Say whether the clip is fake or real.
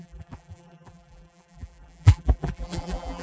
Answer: fake